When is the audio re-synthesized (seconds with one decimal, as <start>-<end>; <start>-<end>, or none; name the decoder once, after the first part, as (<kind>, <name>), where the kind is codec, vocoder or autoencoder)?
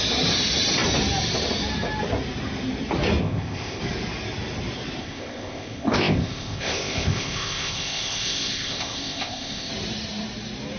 3.2-3.8 (codec, ZipCodec); 5.0-9.7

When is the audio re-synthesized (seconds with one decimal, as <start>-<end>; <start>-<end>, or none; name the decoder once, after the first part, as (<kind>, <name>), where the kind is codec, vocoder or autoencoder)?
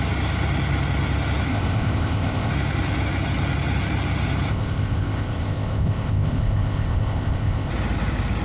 1.5-2.5 (codec, ZipCodec); 4.5-7.7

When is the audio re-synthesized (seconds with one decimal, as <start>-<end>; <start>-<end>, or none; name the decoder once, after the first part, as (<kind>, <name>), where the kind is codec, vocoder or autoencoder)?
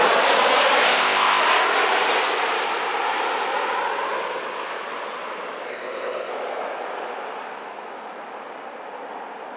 0.8-1.4 (codec, ZipCodec); 5.7-6.3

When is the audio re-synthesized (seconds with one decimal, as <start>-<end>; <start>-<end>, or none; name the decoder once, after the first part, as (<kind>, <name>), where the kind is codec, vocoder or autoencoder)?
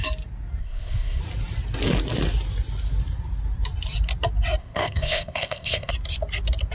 0.6-1.2 (codec, ZipCodec); 4.6-5.9